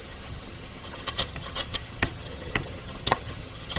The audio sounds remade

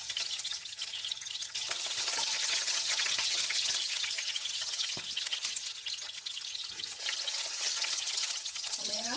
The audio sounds remade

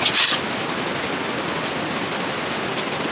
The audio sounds recorded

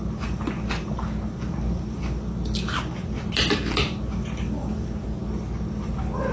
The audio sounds recorded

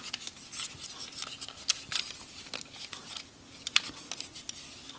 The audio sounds recorded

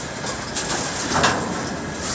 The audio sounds recorded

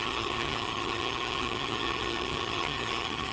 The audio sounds remade